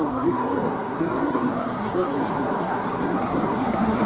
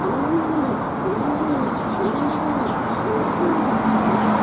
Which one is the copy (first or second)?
first